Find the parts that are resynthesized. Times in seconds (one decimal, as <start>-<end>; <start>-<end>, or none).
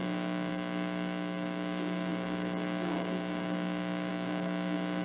0.0-5.0